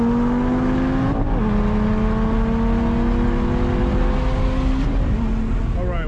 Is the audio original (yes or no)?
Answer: yes